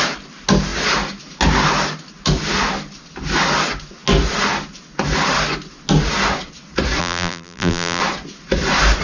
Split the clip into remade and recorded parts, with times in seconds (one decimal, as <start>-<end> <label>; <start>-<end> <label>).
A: 0.0-7.0 recorded; 7.0-8.0 remade; 8.0-9.0 recorded